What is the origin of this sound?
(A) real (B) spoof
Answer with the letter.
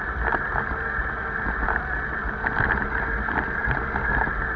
A